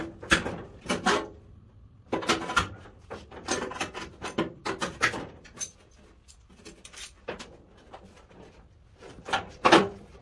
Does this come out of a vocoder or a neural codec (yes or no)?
yes